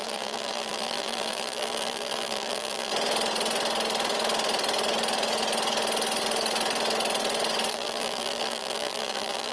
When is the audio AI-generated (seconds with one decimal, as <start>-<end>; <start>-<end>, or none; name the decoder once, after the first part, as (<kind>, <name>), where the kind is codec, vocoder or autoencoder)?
0.0-2.9 (vocoder, BigVGAN v2); 7.7-9.5